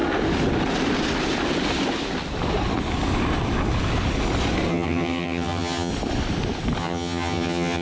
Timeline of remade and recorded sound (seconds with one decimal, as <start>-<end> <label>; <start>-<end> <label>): 0.0-4.7 recorded; 4.7-5.9 remade; 5.9-6.8 recorded; 6.8-7.8 remade